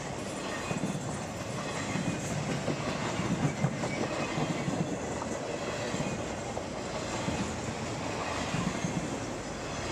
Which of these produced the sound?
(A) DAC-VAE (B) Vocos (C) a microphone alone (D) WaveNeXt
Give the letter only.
C